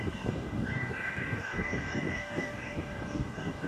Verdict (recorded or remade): remade